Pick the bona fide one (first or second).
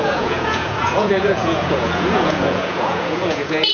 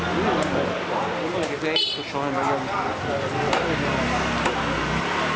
second